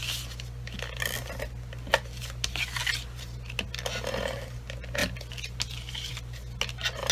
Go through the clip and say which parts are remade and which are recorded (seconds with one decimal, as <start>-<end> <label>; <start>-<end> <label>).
0.0-7.1 recorded